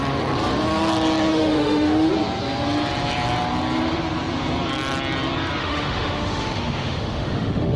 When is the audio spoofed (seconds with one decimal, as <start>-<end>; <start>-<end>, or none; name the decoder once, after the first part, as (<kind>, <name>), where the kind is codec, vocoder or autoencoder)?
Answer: 1.3-2.1 (autoencoder, DAC-VAE); 5.6-7.8